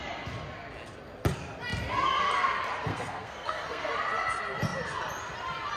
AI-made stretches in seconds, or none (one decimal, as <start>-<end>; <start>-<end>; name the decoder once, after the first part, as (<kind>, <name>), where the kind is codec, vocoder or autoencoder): 2.9-3.9 (codec, SNAC)